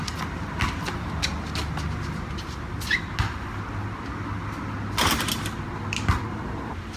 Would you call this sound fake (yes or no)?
no